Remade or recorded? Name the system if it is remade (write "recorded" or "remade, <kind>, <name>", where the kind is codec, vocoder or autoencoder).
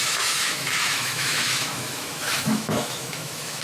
remade, autoencoder, DAC-VAE